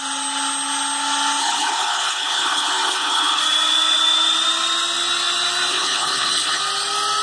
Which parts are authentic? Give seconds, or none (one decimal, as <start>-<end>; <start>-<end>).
0.0-1.4; 3.4-5.7; 6.6-7.2